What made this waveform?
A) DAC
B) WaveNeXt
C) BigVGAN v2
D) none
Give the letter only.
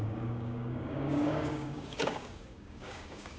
A